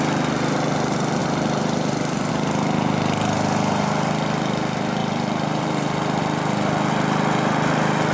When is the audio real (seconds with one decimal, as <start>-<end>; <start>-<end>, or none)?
0.0-1.2; 2.3-5.0; 6.2-8.1